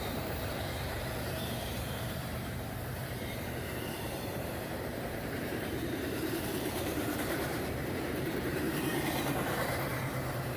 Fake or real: fake